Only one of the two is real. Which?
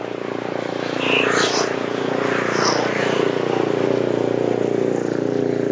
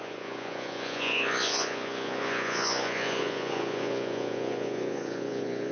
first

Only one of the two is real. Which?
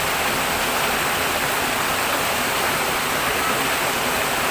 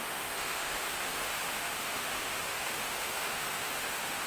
first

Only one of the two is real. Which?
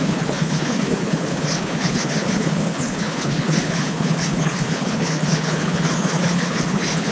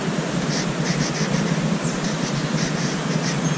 second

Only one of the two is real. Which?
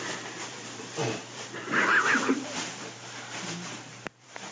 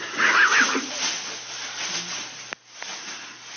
second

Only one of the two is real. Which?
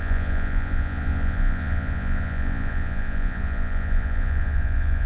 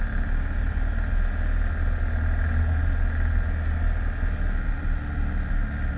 second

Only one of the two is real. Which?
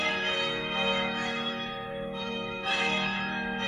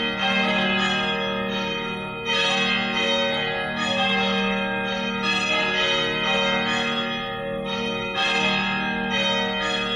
second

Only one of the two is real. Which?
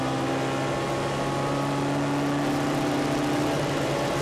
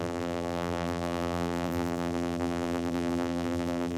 first